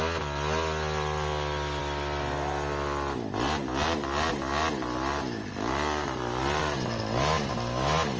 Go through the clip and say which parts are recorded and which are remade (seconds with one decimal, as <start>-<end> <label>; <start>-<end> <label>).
0.0-8.2 recorded